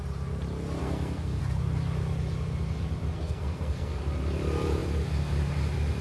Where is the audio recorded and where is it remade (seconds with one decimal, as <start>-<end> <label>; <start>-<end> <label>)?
0.0-0.8 recorded; 0.8-1.4 remade; 1.4-3.1 recorded; 3.1-4.0 remade; 4.0-6.0 recorded